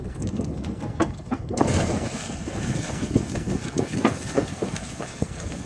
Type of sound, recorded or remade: remade